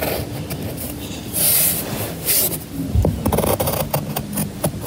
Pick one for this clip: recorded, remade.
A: recorded